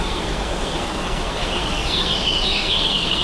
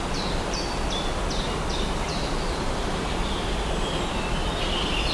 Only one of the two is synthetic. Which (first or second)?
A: first